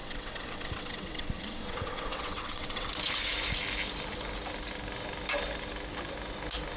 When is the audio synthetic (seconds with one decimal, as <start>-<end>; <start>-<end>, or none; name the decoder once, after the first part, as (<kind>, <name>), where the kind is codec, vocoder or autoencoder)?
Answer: 0.0-2.9 (vocoder, WaveNeXt)